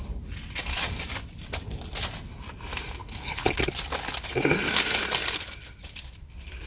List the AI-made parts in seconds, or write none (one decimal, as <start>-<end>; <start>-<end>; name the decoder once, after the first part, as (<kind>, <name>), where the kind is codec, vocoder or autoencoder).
3.0-3.6 (codec, HILCodec)